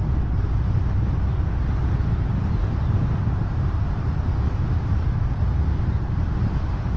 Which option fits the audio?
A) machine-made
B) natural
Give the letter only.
B